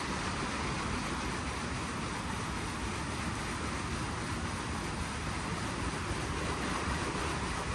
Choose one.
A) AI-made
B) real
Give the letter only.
B